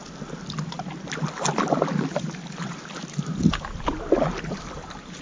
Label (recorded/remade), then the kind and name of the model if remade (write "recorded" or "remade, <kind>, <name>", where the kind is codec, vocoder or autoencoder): recorded